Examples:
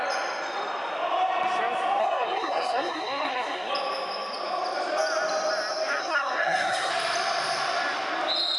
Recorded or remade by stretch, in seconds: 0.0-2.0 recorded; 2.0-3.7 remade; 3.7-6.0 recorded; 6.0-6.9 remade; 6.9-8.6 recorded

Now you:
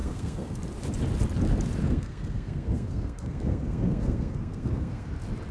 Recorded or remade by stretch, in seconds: 0.0-0.6 remade; 0.6-1.8 recorded; 1.8-5.1 remade; 5.1-5.5 recorded

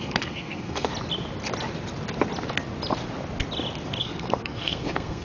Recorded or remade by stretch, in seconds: 0.0-0.9 remade; 0.9-4.0 recorded; 4.0-5.2 remade

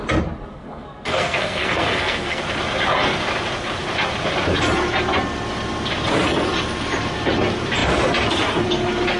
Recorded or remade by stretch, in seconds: 0.0-0.5 recorded; 0.5-2.4 remade; 2.4-9.2 recorded

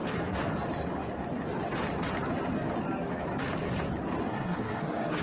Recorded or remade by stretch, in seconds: 0.0-4.3 recorded; 4.3-5.2 remade

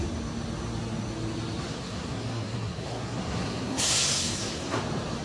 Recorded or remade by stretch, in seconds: 0.0-1.7 recorded; 1.7-4.8 remade; 4.8-5.2 recorded

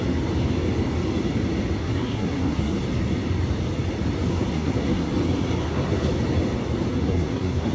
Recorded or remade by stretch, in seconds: 0.0-1.8 recorded; 1.8-2.8 remade; 2.8-4.3 recorded; 4.3-5.1 remade; 5.1-5.6 recorded; 5.6-6.1 remade; 6.1-6.9 recorded; 6.9-7.7 remade

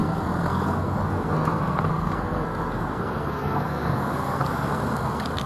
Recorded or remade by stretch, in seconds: 0.0-5.5 remade